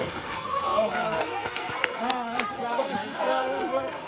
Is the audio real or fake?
fake